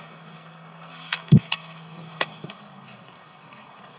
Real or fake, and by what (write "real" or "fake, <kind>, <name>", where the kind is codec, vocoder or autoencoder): fake, codec, SNAC